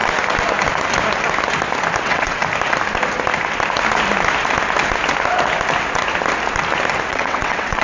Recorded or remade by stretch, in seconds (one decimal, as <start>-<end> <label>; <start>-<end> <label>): 0.0-2.0 recorded; 2.0-2.4 remade; 2.4-7.1 recorded; 7.1-7.8 remade